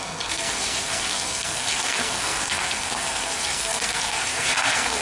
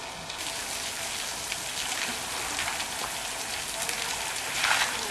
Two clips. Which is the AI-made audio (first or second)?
first